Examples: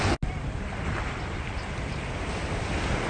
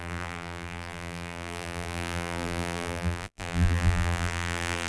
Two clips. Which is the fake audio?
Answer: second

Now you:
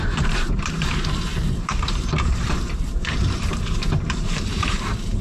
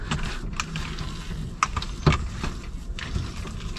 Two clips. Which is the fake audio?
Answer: first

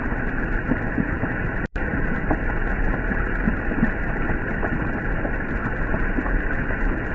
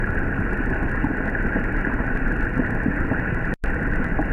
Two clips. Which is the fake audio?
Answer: first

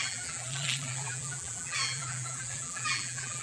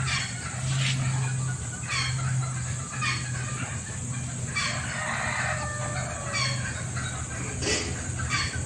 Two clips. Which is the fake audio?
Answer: first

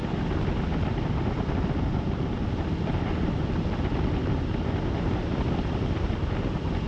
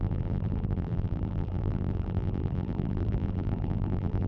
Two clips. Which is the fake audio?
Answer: second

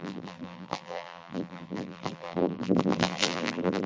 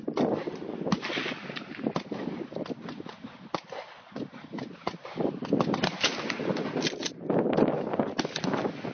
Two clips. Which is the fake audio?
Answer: first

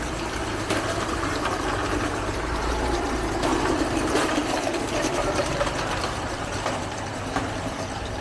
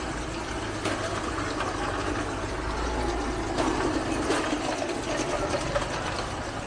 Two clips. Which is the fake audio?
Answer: first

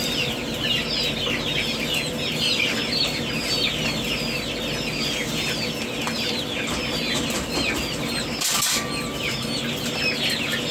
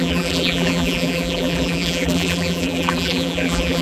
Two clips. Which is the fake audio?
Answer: second